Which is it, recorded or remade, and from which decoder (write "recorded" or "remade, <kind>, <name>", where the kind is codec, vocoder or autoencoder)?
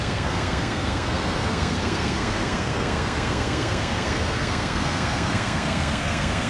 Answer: remade, codec, SNAC